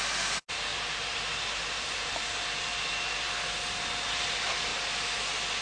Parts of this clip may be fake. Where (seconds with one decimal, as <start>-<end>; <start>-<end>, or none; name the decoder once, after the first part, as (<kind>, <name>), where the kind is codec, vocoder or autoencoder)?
0.7-2.8 (vocoder, BigVGAN v2)